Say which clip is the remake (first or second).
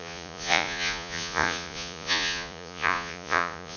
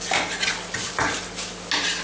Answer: first